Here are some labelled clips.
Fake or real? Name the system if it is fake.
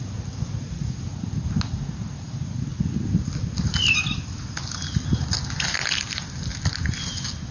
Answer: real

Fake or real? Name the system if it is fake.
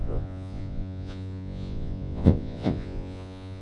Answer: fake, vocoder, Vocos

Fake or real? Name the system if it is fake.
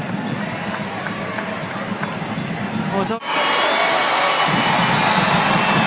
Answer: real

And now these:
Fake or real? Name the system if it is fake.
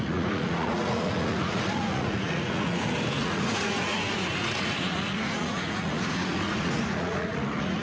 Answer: fake, vocoder, Vocos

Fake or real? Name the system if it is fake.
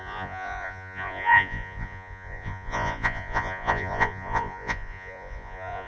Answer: fake, vocoder, Vocos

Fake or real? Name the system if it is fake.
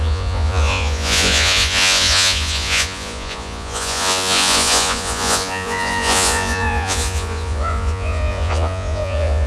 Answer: fake, vocoder, Vocos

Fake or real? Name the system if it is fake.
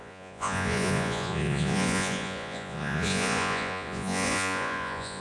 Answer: fake, vocoder, Vocos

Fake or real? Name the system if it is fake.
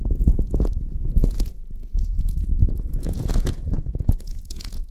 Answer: fake, vocoder, Vocos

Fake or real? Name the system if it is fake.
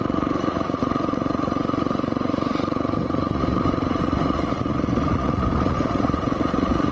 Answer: fake, vocoder, Vocos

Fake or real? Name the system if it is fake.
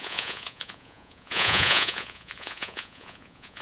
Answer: fake, vocoder, Vocos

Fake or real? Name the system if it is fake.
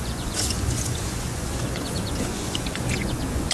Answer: fake, vocoder, Vocos